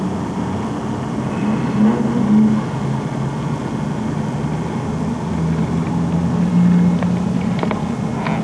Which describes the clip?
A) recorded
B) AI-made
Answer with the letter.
A